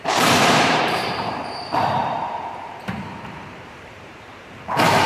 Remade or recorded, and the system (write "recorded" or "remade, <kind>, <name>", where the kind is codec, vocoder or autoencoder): remade, vocoder, BigVGAN v2